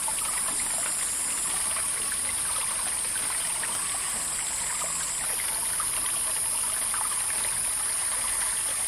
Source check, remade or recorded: recorded